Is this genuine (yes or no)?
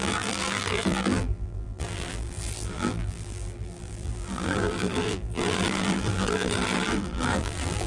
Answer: no